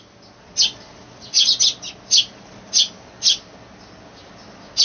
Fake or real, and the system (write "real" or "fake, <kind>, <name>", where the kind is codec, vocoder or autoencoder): real